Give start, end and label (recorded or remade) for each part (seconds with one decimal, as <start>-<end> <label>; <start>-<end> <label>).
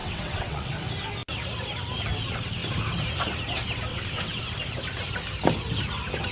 0.0-0.7 remade; 0.7-3.9 recorded; 3.9-4.4 remade; 4.4-6.3 recorded